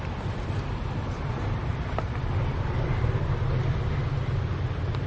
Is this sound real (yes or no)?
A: yes